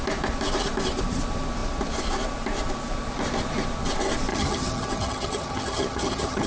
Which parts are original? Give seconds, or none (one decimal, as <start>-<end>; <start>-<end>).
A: 0.0-4.3